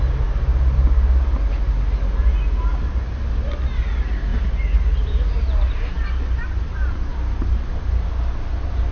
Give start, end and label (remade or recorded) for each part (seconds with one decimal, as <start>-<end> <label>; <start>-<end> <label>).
0.0-8.9 recorded